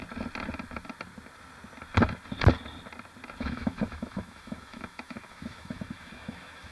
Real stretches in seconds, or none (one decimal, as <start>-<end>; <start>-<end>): 0.0-3.4